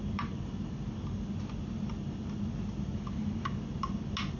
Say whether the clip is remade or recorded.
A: recorded